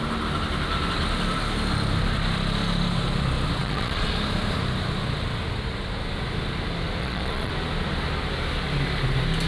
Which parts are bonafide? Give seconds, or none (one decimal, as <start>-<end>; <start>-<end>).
0.0-3.6; 4.1-7.0; 7.5-9.5